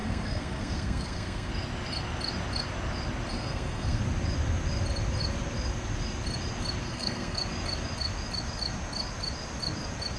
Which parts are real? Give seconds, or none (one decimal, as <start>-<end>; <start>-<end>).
1.5-3.3; 4.0-6.8; 7.4-10.2